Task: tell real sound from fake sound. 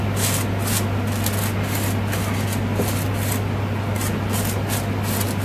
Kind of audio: real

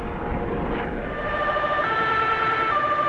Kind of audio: real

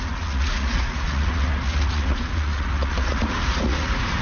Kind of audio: fake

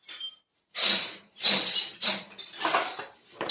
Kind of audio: fake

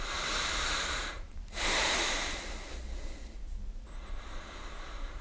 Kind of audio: fake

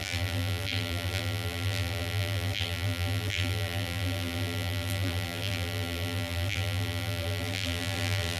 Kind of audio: fake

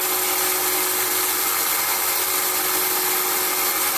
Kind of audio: real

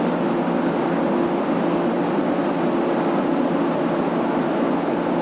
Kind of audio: real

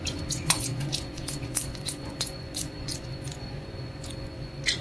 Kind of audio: fake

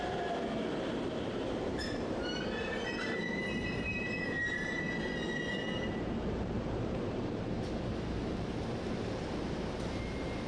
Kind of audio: fake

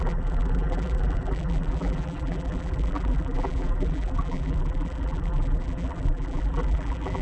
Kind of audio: fake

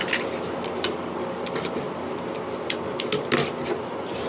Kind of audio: real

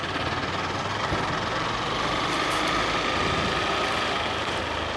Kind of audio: real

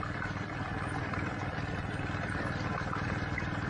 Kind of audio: real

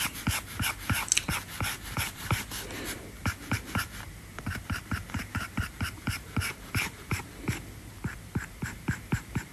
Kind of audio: fake